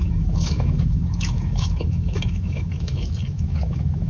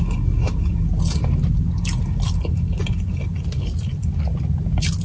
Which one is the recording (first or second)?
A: second